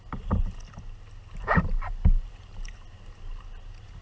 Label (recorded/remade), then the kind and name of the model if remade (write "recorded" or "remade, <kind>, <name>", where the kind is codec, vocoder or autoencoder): recorded